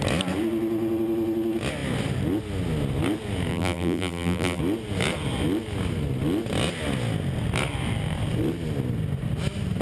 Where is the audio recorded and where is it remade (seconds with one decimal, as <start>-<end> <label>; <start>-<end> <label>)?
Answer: 0.0-3.5 recorded; 3.5-4.6 remade; 4.6-9.8 recorded